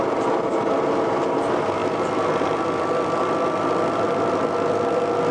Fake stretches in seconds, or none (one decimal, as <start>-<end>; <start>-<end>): 1.8-4.5